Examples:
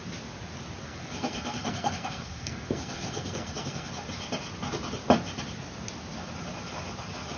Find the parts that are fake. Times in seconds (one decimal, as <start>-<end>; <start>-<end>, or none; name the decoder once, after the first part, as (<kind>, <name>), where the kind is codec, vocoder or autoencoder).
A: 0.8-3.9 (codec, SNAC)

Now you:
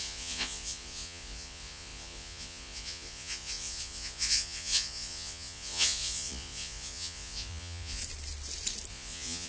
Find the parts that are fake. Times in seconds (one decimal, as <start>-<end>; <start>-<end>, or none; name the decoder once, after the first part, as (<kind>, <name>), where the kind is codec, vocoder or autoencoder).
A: 0.0-8.0 (vocoder, Vocos); 8.9-9.5

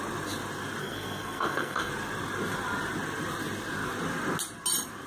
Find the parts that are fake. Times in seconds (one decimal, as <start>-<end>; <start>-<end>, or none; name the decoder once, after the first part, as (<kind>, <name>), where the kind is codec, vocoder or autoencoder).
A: 0.8-1.9 (codec, SNAC)